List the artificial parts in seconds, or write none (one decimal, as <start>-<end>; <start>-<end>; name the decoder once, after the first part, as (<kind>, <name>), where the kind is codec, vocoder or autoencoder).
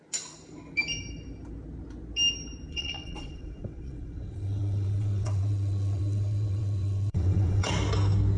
2.7-7.7 (vocoder, WaveNeXt)